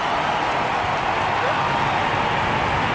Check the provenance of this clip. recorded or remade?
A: recorded